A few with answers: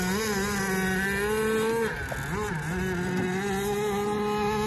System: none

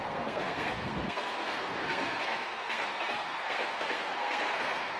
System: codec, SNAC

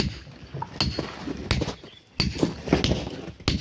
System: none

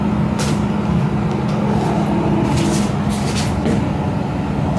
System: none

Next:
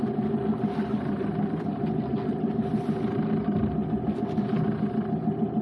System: none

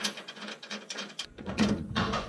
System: vocoder, Vocos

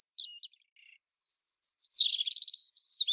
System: none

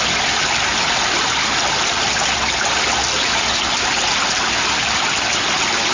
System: none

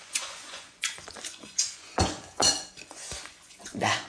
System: vocoder, Vocos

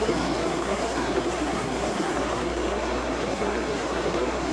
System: codec, SNAC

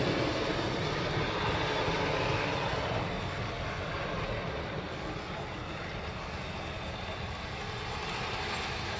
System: none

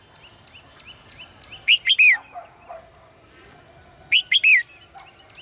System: none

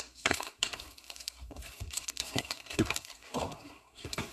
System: codec, SNAC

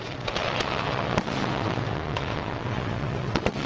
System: vocoder, WaveNeXt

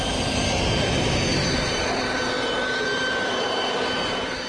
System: vocoder, BigVGAN v2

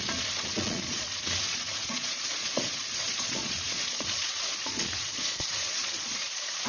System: vocoder, Vocos